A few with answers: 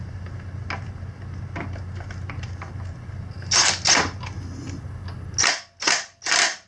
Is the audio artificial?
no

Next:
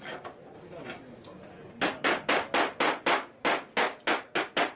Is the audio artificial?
no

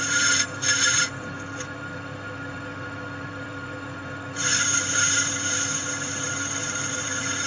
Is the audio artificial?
yes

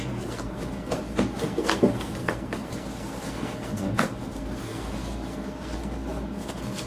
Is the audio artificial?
yes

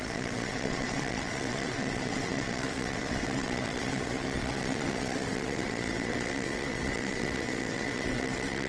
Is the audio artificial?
yes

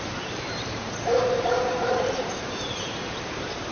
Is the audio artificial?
yes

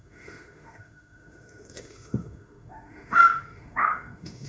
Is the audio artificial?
yes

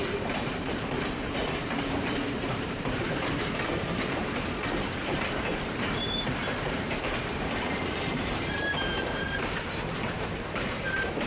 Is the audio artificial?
yes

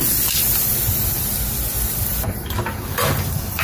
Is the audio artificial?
yes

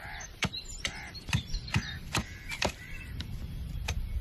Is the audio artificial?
yes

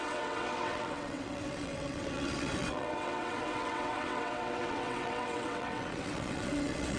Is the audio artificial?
yes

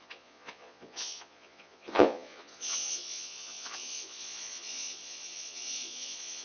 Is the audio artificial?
yes